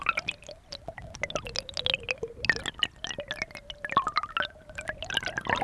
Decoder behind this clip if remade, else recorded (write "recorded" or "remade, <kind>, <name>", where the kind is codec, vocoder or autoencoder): recorded